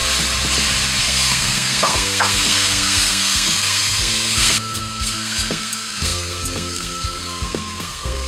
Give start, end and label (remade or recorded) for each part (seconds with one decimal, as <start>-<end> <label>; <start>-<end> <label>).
0.0-1.0 recorded; 1.0-8.3 remade